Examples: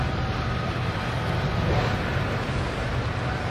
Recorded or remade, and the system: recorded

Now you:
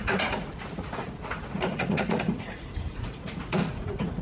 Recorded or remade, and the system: remade, vocoder, Vocos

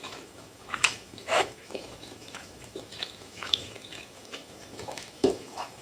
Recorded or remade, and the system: remade, autoencoder, DAC-VAE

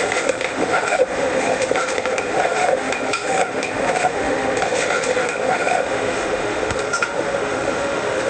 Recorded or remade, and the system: remade, autoencoder, DAC-VAE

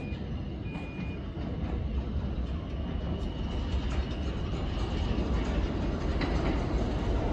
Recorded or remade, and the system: recorded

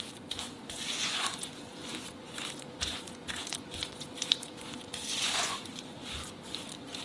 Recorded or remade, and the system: remade, vocoder, Vocos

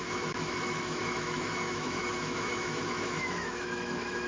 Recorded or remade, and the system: remade, autoencoder, DAC-VAE